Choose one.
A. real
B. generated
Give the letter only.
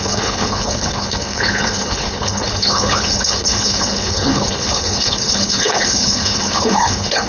B